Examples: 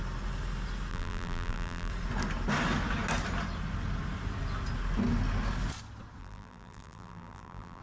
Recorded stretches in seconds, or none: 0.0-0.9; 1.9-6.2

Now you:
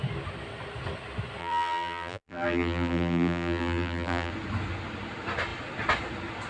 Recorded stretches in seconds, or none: 0.0-1.4; 4.3-6.5

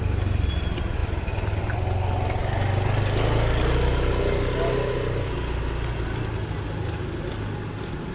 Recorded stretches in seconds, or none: 0.0-8.1